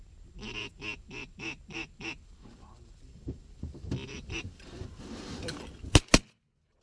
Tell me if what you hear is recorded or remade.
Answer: recorded